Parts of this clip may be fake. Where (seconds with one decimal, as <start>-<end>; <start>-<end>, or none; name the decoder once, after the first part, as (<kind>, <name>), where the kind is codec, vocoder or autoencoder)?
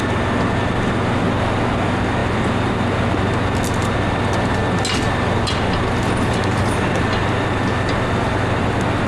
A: none